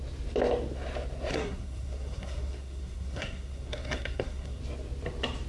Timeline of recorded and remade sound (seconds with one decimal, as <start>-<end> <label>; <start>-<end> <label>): 0.0-1.3 recorded; 1.3-4.6 remade; 4.6-5.5 recorded

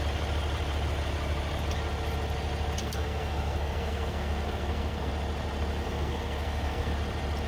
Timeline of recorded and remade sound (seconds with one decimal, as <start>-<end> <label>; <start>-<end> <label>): 0.0-2.8 recorded; 2.8-5.1 remade; 5.1-5.8 recorded; 5.8-6.9 remade; 6.9-7.5 recorded